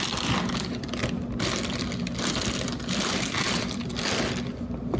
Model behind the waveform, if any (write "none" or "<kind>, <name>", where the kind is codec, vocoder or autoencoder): none